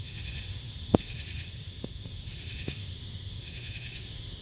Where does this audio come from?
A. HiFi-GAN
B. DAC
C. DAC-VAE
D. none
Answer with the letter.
C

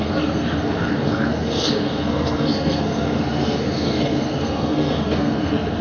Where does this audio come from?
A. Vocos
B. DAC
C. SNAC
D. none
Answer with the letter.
C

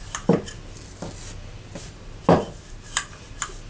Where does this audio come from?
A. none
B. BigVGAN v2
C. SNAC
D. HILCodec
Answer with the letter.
A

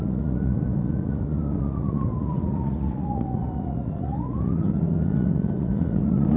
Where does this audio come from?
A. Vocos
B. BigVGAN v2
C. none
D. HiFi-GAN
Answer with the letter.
A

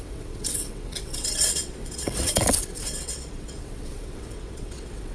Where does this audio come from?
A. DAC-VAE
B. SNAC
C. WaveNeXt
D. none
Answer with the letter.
C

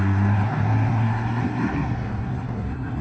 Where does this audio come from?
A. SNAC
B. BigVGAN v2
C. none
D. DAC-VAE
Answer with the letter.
A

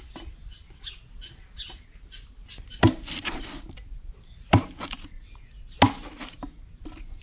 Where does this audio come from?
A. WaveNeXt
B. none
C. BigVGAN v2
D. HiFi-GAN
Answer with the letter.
B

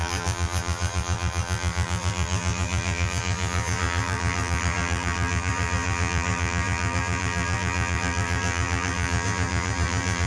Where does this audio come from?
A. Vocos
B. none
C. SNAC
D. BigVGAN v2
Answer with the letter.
D